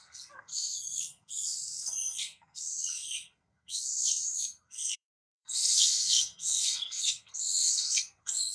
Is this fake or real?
fake